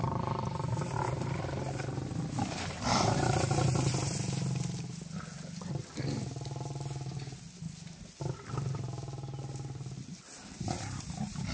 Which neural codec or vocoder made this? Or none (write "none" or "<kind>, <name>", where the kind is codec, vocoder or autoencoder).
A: none